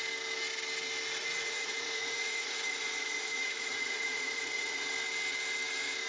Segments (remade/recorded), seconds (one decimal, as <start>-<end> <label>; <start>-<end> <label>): 0.0-1.2 recorded; 1.2-4.9 remade; 4.9-6.1 recorded